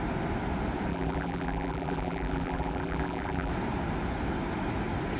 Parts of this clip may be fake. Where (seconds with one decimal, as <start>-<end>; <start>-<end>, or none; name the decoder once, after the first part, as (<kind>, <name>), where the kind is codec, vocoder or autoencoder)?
0.9-3.5 (vocoder, BigVGAN v2)